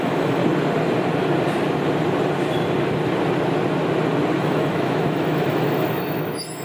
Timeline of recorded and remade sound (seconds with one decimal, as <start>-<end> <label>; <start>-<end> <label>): 0.0-0.4 remade; 0.4-4.4 recorded; 4.4-6.6 remade

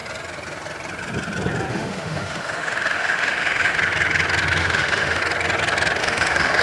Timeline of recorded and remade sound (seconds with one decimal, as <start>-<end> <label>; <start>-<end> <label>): 0.0-1.7 recorded; 1.7-3.8 remade; 3.8-4.6 recorded; 4.6-5.2 remade; 5.2-6.0 recorded; 6.0-6.6 remade

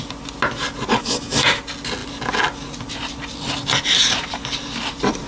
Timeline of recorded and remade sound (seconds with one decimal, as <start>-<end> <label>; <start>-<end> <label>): 0.0-1.0 recorded; 1.0-1.6 remade; 1.6-5.3 recorded

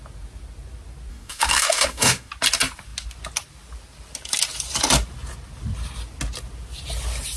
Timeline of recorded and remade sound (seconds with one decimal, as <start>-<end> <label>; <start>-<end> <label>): 0.0-1.1 recorded; 1.1-2.3 remade; 2.3-7.4 recorded

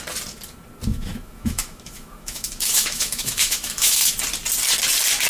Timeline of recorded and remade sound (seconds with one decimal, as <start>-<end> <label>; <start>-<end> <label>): 0.0-0.9 recorded; 0.9-4.1 remade; 4.1-5.3 recorded